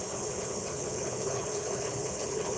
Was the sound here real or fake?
fake